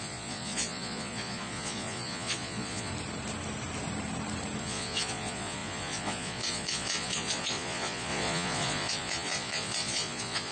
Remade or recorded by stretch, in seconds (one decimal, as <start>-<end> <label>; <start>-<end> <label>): 0.0-2.9 remade; 2.9-4.6 recorded; 4.6-10.5 remade